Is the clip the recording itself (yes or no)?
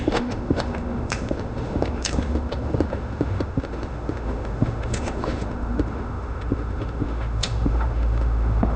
no